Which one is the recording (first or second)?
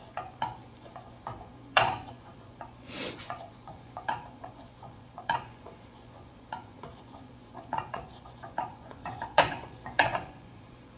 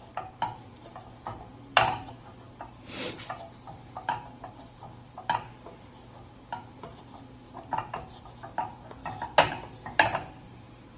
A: second